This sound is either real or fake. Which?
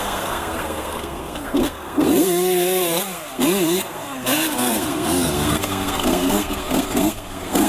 fake